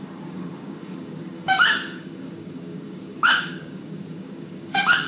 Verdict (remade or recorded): remade